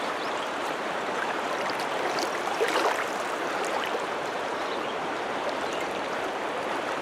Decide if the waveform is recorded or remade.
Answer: remade